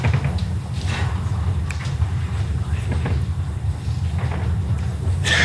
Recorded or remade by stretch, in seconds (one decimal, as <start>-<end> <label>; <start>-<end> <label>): 0.0-5.4 recorded